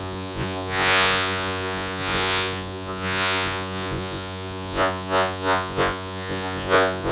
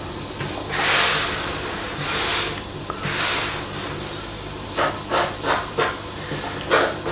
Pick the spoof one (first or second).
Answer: first